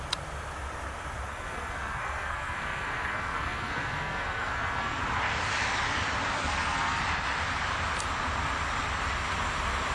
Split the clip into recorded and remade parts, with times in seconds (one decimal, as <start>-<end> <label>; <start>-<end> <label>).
0.0-1.3 recorded; 1.3-5.0 remade; 5.0-6.4 recorded; 6.4-7.0 remade; 7.0-9.9 recorded